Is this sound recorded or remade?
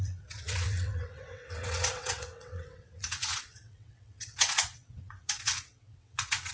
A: remade